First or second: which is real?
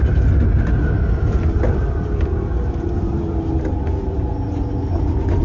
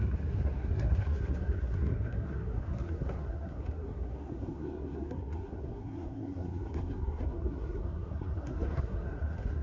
first